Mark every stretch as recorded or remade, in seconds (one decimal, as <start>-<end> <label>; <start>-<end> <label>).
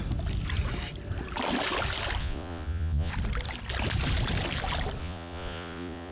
0.0-2.2 recorded; 2.2-3.1 remade; 3.1-5.0 recorded; 5.0-6.1 remade